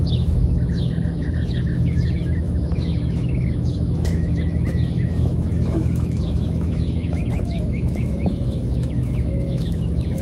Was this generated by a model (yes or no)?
yes